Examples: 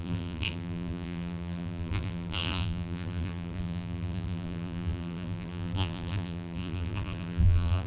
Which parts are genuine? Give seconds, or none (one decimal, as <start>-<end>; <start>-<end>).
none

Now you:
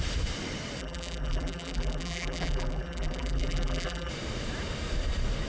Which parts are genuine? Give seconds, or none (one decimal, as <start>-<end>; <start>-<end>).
0.0-0.8; 4.1-5.5

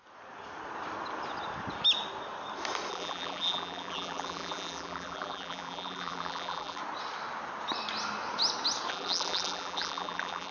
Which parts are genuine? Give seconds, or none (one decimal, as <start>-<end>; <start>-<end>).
0.0-2.9; 6.8-8.9

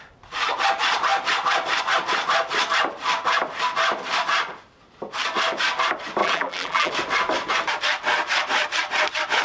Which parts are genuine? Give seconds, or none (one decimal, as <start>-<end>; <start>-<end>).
0.0-6.2; 6.9-9.4